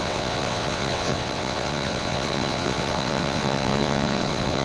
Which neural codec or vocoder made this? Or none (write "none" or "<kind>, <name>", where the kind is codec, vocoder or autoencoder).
vocoder, WaveNeXt